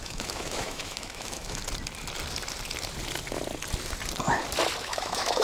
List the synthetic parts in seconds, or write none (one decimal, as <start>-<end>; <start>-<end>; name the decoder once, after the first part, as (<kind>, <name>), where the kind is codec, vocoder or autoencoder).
0.0-1.6 (autoencoder, DAC-VAE); 4.8-5.4